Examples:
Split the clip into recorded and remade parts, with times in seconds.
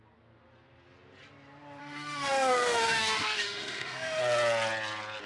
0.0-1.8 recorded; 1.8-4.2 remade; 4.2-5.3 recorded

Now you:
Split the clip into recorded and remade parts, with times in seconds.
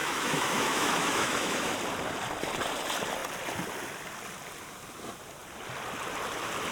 0.0-1.7 remade; 1.7-6.7 recorded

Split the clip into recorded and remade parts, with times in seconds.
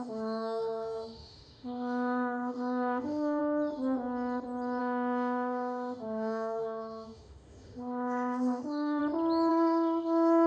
0.0-3.4 remade; 3.4-4.8 recorded; 4.8-9.0 remade; 9.0-9.5 recorded; 9.5-10.5 remade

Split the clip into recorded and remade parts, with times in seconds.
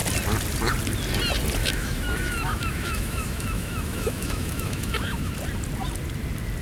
0.0-1.6 recorded; 1.6-5.3 remade; 5.3-6.6 recorded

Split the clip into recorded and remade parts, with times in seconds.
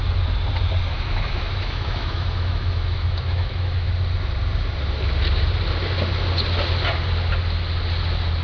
0.0-0.9 recorded; 0.9-3.9 remade; 3.9-8.4 recorded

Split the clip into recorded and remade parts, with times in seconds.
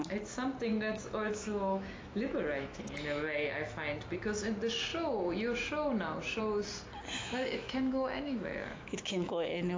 0.0-0.7 recorded; 0.7-2.8 remade; 2.8-7.2 recorded; 7.2-9.8 remade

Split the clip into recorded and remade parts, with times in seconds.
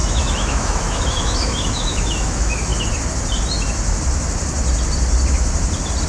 0.0-2.7 remade; 2.7-6.1 recorded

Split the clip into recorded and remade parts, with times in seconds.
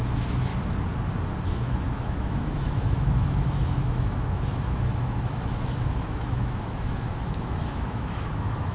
0.0-0.5 remade; 0.5-1.5 recorded; 1.5-8.7 remade